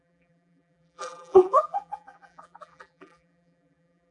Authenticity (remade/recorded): remade